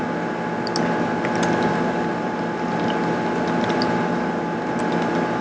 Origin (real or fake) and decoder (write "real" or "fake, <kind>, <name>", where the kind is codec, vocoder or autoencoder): real